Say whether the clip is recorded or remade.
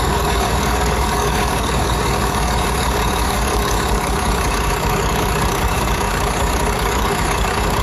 remade